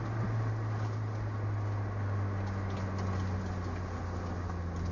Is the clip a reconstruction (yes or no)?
no